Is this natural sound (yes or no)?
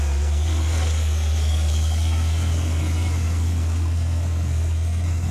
no